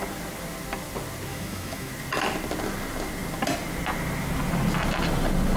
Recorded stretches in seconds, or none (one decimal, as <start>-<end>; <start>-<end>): 0.0-1.3; 1.9-5.6